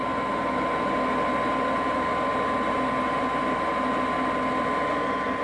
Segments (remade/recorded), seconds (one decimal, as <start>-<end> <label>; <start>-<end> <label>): 0.0-5.4 recorded